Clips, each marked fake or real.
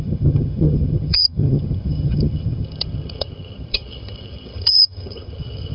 fake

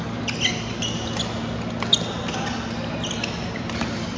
real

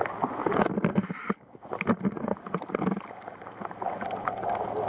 real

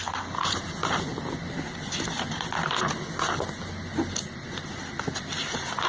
real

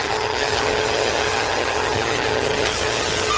fake